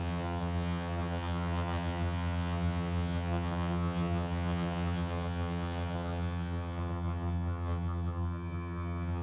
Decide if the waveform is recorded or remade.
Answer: remade